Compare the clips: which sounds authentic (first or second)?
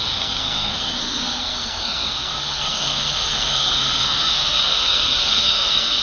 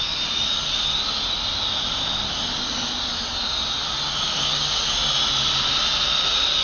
second